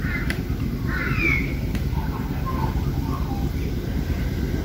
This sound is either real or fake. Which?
real